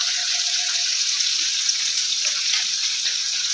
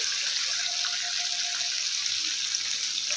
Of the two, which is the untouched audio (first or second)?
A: second